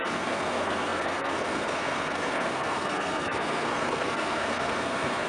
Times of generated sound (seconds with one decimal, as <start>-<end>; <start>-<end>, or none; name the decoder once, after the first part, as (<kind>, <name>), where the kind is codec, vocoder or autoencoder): 0.0-5.3 (codec, SNAC)

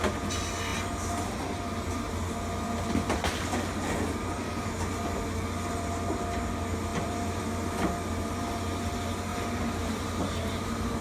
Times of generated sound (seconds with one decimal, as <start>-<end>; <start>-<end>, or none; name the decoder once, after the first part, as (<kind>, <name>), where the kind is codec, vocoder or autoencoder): 6.9-7.4 (vocoder, BigVGAN v2); 9.3-11.0

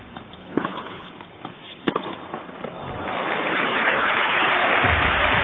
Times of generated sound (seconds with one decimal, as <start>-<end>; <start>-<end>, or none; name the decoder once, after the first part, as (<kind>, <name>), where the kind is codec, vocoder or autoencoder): 0.4-1.1 (codec, HILCodec); 3.5-4.5

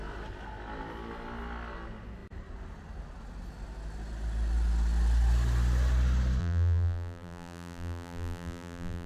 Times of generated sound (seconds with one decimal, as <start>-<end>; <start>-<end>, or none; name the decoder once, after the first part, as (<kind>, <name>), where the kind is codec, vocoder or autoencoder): 6.4-9.1 (vocoder, BigVGAN v2)

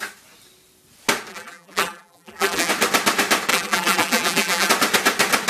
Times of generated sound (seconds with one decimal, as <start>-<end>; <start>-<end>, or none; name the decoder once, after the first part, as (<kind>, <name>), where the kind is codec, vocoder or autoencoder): 1.3-2.7 (vocoder, BigVGAN v2); 3.5-4.7

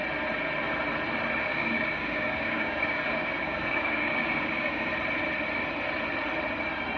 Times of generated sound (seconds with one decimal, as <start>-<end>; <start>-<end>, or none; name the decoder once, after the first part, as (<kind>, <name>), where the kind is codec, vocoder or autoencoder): 1.5-4.9 (codec, DAC)